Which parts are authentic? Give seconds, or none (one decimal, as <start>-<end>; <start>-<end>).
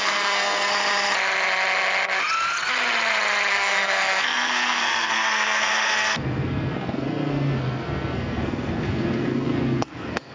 0.7-3.5